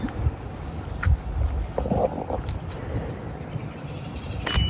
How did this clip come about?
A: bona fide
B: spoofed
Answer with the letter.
A